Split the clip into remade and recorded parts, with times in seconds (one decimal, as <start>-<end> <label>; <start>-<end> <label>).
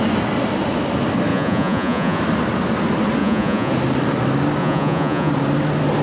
0.0-1.3 recorded; 1.3-2.2 remade; 2.2-3.2 recorded; 3.2-3.7 remade; 3.7-4.6 recorded; 4.6-5.3 remade; 5.3-6.0 recorded